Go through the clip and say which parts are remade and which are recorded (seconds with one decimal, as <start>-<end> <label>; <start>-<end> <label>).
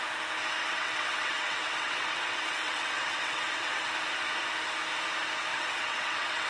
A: 0.0-0.6 recorded; 0.6-3.9 remade; 3.9-5.5 recorded; 5.5-6.5 remade